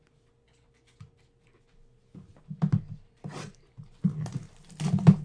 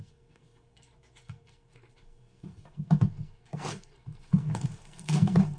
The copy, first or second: second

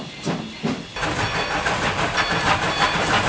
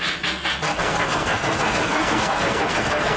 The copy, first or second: second